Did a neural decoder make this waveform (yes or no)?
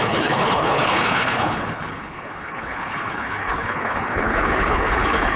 yes